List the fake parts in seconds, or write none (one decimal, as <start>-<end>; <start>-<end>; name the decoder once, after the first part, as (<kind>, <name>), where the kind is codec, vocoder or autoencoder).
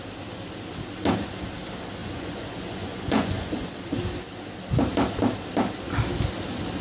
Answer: 2.0-3.9 (vocoder, Vocos)